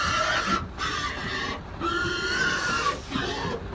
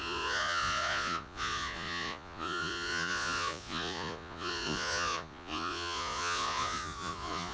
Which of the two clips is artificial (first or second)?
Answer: second